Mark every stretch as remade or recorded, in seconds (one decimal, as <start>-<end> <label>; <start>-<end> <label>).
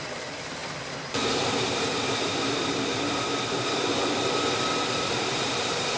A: 0.0-4.0 remade; 4.0-4.9 recorded; 4.9-6.0 remade